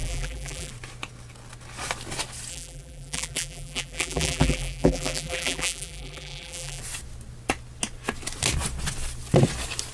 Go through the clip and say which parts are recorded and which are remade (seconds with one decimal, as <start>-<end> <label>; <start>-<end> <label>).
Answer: 0.0-0.7 remade; 0.7-2.5 recorded; 2.5-6.8 remade; 6.8-9.9 recorded